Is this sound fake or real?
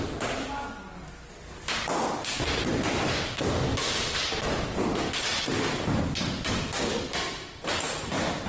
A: real